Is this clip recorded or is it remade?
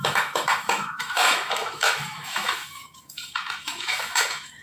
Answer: remade